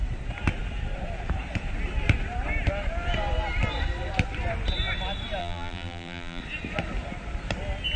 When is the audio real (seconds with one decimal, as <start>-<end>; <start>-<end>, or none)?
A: 0.0-5.4; 6.4-8.0